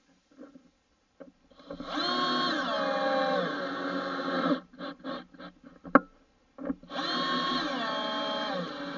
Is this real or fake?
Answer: real